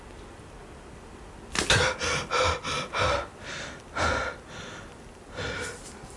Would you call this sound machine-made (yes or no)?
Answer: no